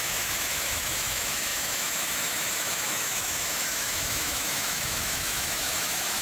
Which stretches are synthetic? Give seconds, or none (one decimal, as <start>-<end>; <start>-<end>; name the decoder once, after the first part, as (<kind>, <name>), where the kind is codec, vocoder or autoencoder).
0.0-6.2 (autoencoder, DAC-VAE)

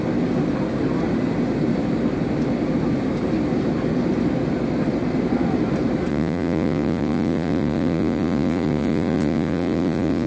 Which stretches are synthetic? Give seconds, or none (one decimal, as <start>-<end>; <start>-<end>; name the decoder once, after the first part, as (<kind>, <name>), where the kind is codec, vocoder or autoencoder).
6.1-10.3 (vocoder, Vocos)

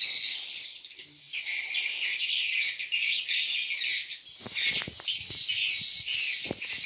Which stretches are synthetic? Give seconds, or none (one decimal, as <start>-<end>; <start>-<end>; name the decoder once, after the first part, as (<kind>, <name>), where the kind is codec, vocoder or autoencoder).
0.6-1.2 (codec, HILCodec)

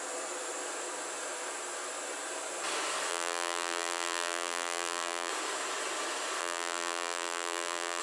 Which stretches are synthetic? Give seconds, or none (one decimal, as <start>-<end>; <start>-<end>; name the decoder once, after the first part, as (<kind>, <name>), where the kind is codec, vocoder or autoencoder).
3.1-5.3 (vocoder, BigVGAN v2); 6.4-8.0